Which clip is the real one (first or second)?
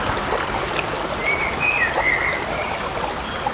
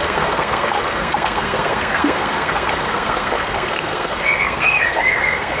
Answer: first